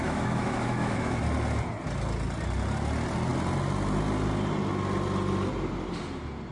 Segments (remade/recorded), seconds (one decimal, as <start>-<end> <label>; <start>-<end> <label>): 0.0-1.2 remade; 1.2-6.5 recorded